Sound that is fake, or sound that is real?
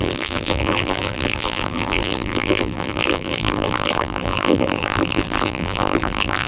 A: fake